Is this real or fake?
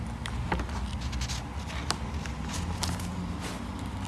real